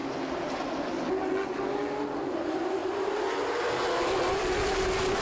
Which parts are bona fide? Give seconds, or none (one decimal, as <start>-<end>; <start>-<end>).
0.0-5.2